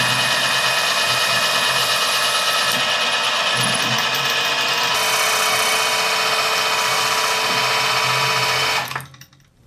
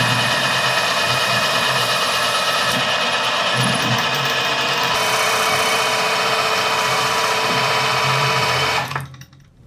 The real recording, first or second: first